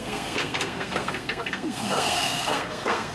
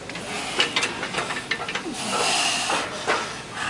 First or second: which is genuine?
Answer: second